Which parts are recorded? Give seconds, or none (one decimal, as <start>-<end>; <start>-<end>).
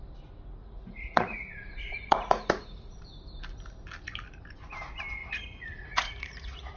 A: 0.0-0.6; 3.0-5.2